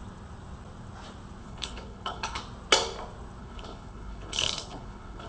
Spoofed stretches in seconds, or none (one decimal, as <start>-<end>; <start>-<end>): 1.4-2.4; 3.4-5.3